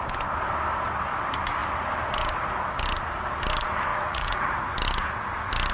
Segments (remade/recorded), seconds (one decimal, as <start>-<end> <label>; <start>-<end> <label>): 0.0-3.9 recorded; 3.9-4.7 remade; 4.7-5.7 recorded